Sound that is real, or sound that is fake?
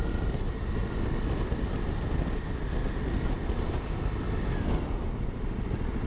real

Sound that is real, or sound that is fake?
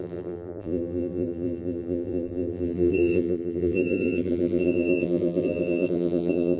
fake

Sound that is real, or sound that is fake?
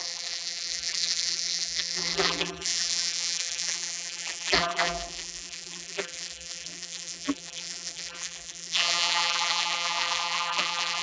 fake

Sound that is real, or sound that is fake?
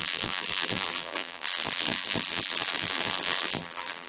fake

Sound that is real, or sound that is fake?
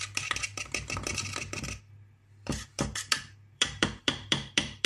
fake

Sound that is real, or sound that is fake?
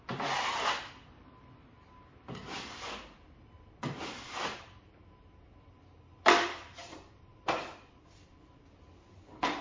fake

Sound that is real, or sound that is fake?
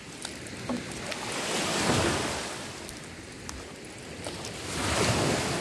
real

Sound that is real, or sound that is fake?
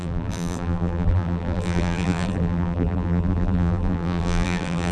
fake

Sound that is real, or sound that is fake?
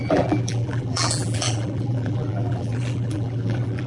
fake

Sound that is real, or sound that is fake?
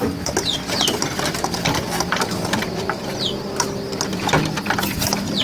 real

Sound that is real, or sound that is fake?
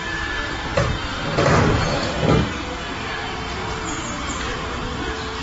real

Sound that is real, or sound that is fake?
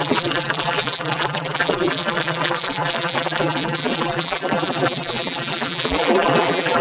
fake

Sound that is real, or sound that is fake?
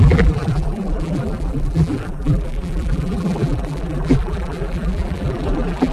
fake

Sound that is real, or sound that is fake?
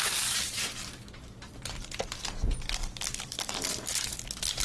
fake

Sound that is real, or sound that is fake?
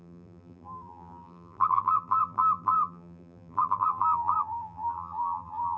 fake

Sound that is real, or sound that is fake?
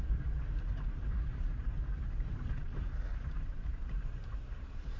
fake